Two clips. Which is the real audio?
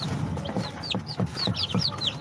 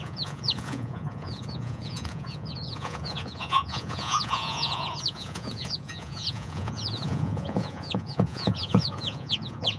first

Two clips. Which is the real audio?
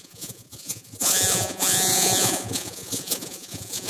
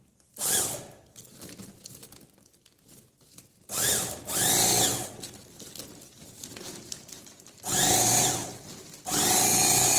second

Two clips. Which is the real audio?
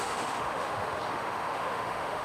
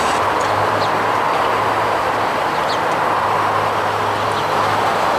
second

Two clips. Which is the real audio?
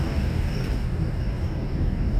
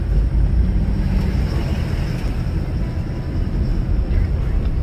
second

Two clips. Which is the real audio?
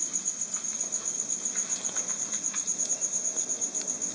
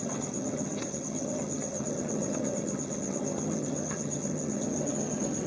first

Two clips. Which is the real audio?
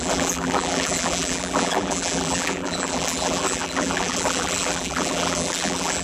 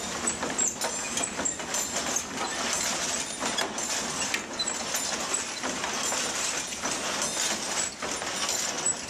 second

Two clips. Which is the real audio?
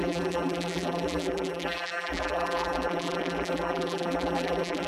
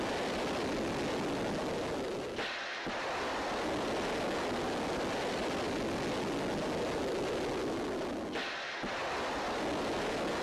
second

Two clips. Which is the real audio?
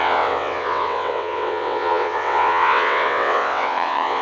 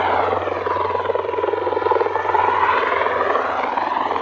second